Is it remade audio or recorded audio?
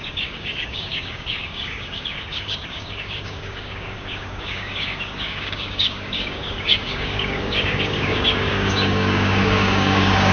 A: remade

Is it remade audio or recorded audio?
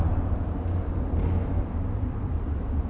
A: recorded